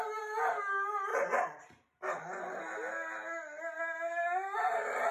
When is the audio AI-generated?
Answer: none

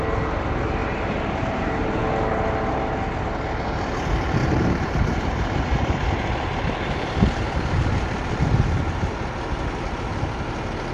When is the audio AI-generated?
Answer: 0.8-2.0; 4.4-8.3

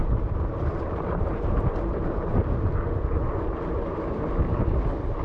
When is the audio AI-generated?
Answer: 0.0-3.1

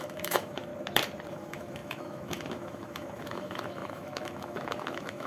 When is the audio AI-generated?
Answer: 0.0-0.7; 1.3-5.3